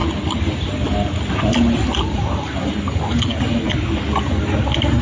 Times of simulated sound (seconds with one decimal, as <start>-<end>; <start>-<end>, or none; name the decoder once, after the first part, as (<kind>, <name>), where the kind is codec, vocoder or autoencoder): none